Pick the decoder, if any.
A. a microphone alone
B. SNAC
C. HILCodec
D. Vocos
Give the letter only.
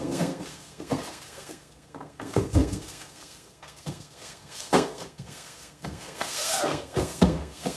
B